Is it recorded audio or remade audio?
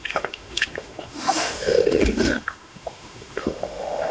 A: remade